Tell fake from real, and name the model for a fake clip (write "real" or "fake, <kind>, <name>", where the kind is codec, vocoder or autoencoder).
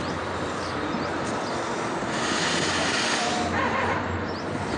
real